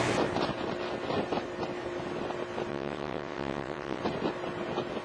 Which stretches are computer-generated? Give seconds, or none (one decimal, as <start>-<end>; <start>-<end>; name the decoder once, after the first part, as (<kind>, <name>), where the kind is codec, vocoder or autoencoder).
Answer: 2.7-4.0 (vocoder, WaveNeXt)